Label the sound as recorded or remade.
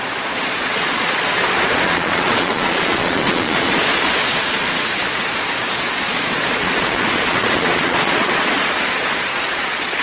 remade